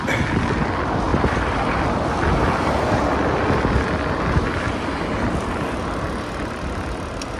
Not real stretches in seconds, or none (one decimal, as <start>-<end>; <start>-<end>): 1.1-1.8